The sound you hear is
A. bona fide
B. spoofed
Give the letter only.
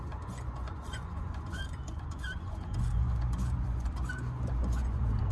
B